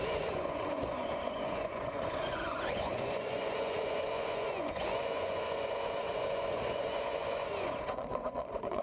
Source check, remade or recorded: remade